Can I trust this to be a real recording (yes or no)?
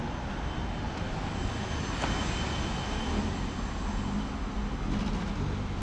yes